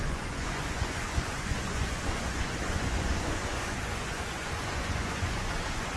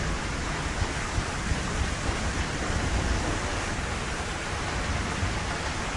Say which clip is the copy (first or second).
first